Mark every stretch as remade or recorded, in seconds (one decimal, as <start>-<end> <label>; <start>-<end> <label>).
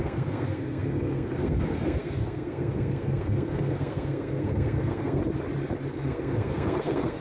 0.0-5.2 remade; 5.2-5.9 recorded; 5.9-7.2 remade